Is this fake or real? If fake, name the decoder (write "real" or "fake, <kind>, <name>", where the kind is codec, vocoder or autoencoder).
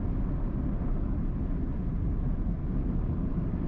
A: real